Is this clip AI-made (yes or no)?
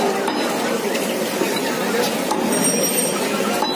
no